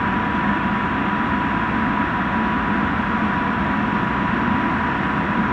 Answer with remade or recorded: recorded